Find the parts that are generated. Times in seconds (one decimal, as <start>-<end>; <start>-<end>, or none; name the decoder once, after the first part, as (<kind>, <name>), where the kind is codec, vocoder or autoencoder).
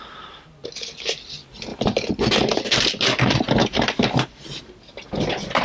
1.7-2.2 (vocoder, BigVGAN v2); 3.6-4.6